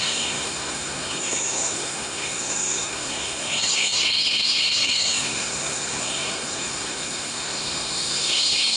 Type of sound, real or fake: fake